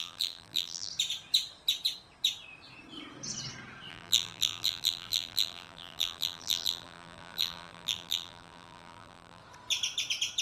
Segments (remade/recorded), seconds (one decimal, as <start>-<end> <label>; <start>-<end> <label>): 0.0-0.9 remade; 0.9-3.9 recorded; 3.9-9.4 remade; 9.4-10.4 recorded